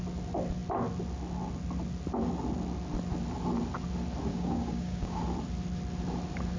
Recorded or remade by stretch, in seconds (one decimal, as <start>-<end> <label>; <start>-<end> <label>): 0.0-4.3 recorded; 4.3-5.2 remade; 5.2-6.6 recorded